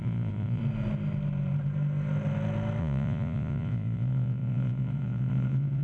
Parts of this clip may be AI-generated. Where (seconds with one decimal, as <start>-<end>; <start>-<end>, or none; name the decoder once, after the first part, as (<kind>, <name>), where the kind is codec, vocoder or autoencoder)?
0.0-0.6 (vocoder, Vocos); 2.8-5.8